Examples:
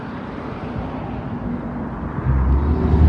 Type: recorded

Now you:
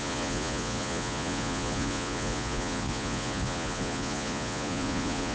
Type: remade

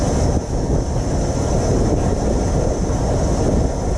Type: recorded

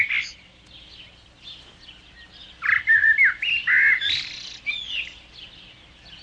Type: recorded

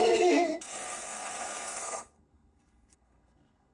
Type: remade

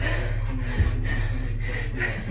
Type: recorded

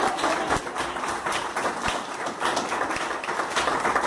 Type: recorded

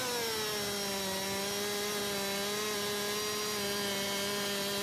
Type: recorded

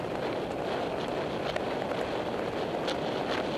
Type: recorded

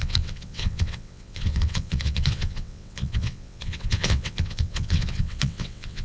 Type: remade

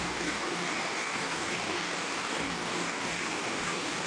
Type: remade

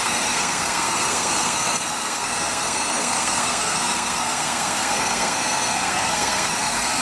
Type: remade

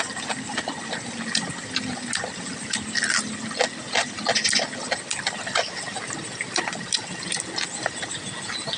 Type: recorded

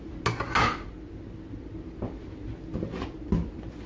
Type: recorded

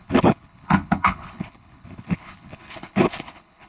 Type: remade